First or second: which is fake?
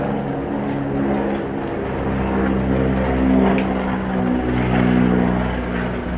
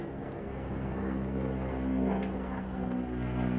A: second